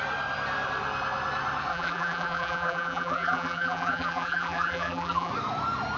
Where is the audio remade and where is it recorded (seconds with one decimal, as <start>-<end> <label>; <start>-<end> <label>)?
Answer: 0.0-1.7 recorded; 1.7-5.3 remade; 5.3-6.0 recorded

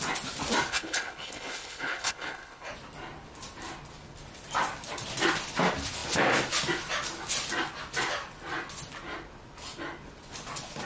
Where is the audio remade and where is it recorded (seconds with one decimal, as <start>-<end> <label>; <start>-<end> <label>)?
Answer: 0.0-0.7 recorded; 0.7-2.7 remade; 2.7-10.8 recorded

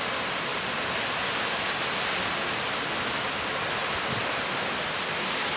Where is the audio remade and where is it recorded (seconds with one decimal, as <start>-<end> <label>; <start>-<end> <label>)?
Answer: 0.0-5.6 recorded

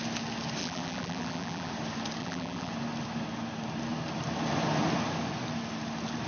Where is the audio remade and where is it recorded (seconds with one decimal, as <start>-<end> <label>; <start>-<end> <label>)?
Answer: 0.0-0.6 recorded; 0.6-1.7 remade; 1.7-2.2 recorded; 2.2-2.7 remade; 2.7-6.3 recorded